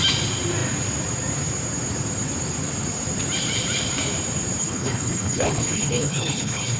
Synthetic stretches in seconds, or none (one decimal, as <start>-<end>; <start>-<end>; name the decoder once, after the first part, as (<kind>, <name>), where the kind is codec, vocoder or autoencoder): 4.6-6.8 (codec, HILCodec)